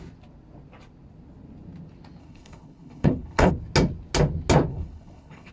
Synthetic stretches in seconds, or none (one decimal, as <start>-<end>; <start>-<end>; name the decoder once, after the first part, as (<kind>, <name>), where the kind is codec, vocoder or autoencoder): 2.2-3.5 (codec, HILCodec); 4.7-5.5